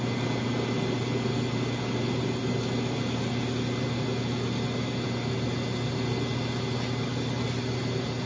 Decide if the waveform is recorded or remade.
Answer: recorded